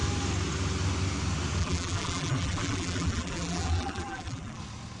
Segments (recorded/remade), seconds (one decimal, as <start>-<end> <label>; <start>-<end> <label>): 0.0-1.6 recorded; 1.6-4.6 remade; 4.6-5.0 recorded